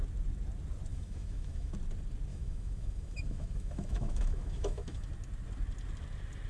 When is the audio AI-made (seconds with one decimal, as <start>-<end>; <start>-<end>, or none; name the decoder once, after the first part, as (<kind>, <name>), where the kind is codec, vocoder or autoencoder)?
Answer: 0.9-1.7 (autoencoder, DAC-VAE); 2.3-5.1